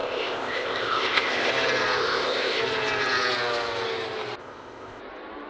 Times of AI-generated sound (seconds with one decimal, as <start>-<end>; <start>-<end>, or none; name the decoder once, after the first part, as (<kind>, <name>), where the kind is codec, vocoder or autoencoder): 0.0-1.5 (codec, ZipCodec); 2.0-2.6; 4.4-5.0